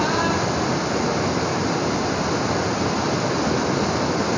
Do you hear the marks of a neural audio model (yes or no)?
no